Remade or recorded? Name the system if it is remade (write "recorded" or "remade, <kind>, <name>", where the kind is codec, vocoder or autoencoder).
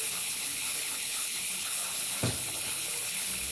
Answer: remade, codec, HILCodec